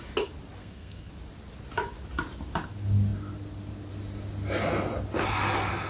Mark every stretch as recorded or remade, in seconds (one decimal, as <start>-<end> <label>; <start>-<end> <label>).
0.0-0.6 recorded; 0.6-1.1 remade; 1.1-5.9 recorded